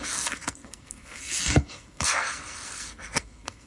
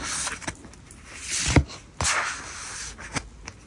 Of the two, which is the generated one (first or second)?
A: first